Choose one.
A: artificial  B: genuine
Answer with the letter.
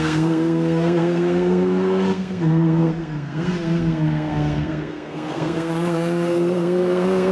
A